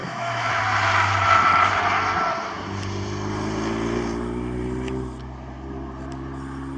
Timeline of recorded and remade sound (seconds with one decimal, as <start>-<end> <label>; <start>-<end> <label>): 0.0-0.6 remade; 0.6-6.8 recorded

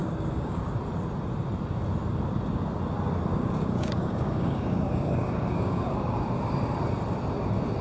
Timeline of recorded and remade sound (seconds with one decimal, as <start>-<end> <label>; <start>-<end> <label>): 0.0-0.8 remade; 0.8-3.3 recorded; 3.3-6.3 remade; 6.3-7.8 recorded

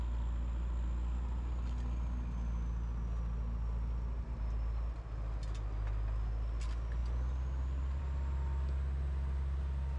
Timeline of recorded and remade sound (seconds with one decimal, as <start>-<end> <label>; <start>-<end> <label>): 0.0-10.0 recorded

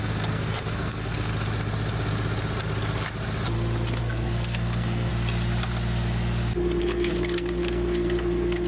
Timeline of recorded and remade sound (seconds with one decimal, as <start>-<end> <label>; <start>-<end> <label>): 0.0-1.3 remade; 1.3-4.0 recorded; 4.0-5.1 remade; 5.1-6.8 recorded; 6.8-8.7 remade

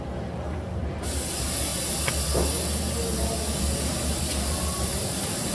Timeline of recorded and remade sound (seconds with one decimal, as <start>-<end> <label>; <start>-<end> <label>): 0.0-1.7 remade; 1.7-4.2 recorded; 4.2-5.5 remade

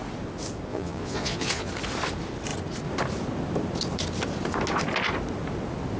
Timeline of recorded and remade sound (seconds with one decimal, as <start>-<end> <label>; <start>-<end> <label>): 0.0-0.7 recorded; 0.7-1.7 remade; 1.7-6.0 recorded